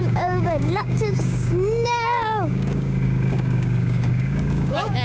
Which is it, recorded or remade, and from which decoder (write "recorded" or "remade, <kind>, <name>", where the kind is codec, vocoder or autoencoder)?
remade, codec, DAC